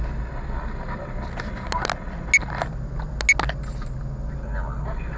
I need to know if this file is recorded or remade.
recorded